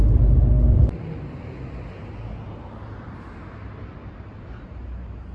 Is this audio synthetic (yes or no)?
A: no